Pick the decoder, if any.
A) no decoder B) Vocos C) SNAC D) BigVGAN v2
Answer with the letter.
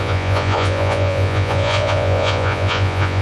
B